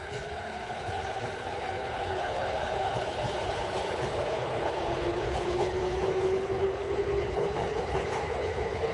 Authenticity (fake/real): fake